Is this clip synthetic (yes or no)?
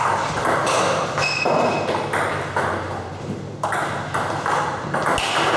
no